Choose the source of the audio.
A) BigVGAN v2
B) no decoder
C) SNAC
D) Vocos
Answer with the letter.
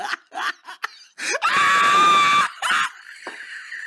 B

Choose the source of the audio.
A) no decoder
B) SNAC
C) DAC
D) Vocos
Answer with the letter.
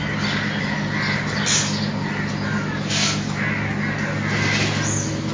A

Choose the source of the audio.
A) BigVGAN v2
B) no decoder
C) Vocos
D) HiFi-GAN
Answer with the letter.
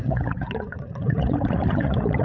C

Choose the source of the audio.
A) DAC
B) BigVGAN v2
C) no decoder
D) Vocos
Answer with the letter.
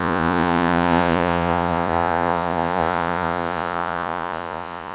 D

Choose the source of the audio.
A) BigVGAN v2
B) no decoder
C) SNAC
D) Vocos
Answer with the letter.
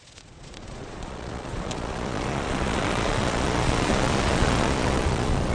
D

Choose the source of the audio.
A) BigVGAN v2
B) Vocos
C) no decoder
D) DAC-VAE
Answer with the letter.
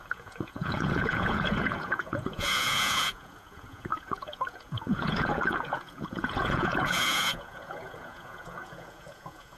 B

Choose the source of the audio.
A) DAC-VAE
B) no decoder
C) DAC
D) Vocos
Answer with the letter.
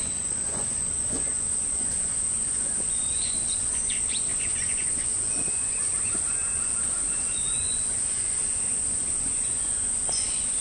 D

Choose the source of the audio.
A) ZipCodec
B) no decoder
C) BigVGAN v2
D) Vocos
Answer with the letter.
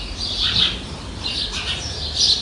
B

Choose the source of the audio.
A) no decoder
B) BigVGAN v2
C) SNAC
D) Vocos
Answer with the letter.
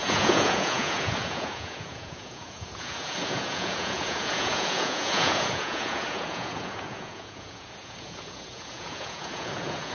D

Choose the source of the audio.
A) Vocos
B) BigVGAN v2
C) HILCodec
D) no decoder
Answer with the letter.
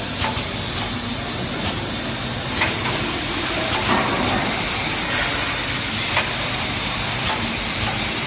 D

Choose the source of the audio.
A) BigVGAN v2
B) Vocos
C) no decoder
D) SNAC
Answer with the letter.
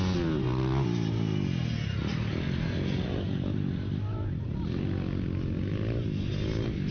C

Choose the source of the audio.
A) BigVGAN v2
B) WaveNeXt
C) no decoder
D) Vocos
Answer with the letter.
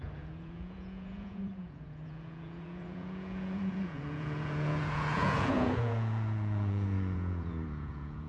D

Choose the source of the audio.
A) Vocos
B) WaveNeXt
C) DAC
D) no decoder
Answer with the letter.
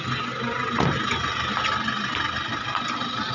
D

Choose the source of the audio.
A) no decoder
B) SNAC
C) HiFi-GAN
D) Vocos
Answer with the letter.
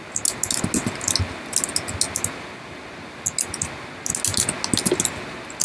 A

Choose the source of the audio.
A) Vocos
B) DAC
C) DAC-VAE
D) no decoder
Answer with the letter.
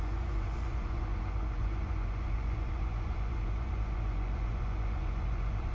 A